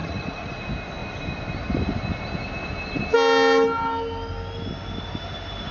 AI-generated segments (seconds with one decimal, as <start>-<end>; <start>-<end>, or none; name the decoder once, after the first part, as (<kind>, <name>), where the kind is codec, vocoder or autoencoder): 0.0-0.6 (vocoder, Vocos)